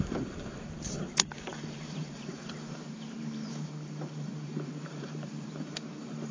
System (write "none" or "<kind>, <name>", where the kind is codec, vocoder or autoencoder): vocoder, BigVGAN v2